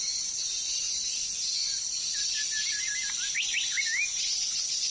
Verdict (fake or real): real